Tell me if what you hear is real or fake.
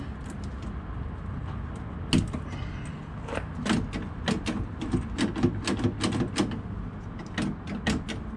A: real